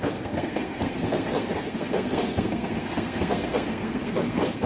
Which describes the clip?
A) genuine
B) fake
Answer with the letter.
B